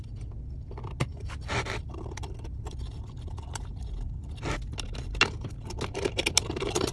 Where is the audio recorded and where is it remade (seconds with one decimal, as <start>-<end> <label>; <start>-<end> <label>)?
0.0-1.1 recorded; 1.1-4.4 remade; 4.4-6.9 recorded